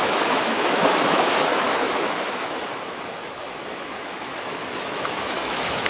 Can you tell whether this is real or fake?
fake